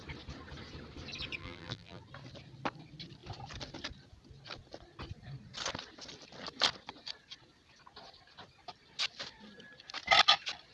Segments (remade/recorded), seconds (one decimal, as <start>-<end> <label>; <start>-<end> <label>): 0.0-1.4 recorded; 1.4-2.0 remade; 2.0-10.7 recorded